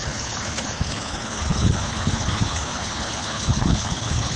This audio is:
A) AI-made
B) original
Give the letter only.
A